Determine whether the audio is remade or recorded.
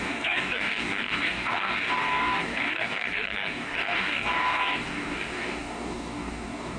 remade